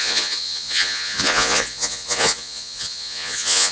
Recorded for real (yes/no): no